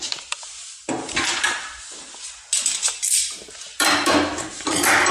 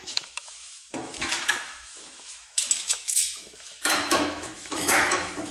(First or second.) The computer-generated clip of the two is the second